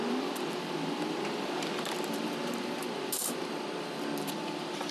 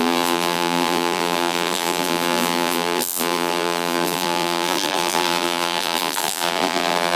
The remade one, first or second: second